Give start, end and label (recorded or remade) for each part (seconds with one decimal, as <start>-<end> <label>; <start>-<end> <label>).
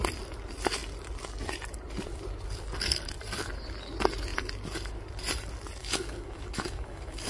0.0-5.8 recorded; 5.8-7.3 remade